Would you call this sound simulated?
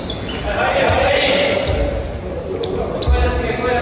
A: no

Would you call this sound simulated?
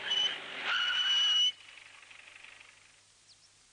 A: no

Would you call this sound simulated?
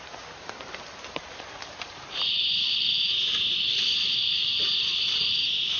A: yes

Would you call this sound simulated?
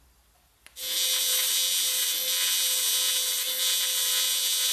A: no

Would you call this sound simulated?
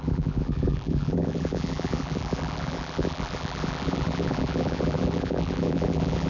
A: yes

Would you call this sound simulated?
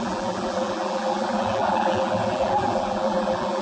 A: yes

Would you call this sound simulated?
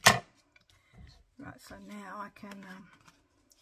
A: no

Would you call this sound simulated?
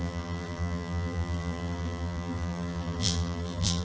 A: yes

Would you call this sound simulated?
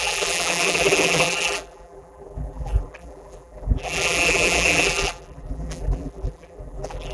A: yes